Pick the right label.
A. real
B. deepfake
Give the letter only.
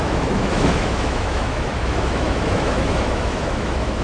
B